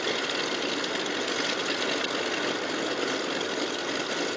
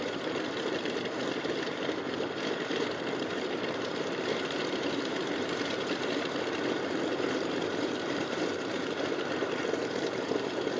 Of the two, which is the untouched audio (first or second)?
first